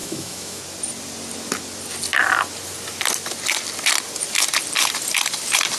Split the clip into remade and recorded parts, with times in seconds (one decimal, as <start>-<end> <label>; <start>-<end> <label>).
0.0-0.6 remade; 0.6-5.8 recorded